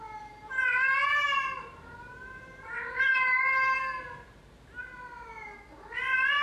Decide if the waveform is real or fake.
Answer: real